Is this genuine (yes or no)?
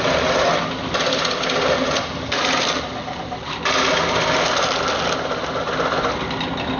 yes